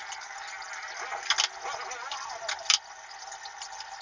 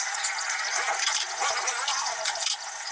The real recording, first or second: first